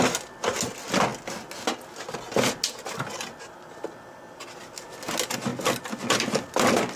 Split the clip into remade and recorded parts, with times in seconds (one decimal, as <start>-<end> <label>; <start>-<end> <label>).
0.0-7.0 recorded